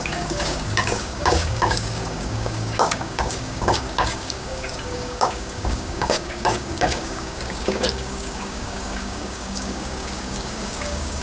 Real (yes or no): no